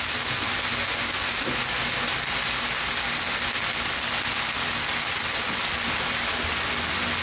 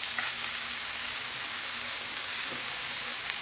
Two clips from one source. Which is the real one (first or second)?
first